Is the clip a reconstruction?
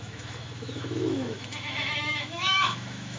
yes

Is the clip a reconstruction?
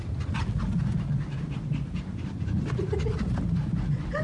no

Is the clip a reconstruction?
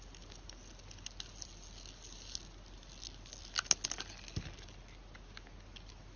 no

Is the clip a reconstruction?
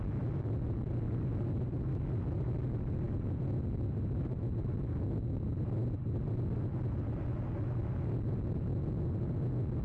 no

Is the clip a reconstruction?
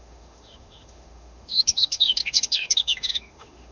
yes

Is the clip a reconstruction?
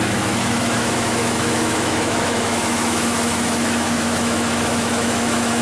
yes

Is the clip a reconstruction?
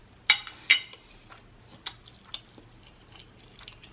no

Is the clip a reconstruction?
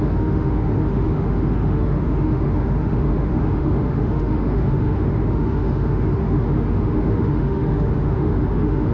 yes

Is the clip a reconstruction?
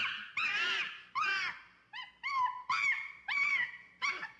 no